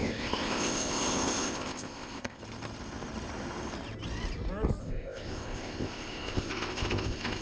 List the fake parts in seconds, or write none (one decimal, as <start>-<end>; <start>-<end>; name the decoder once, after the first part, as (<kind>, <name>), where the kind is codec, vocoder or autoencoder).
0.0-2.4 (codec, ZipCodec); 4.8-7.4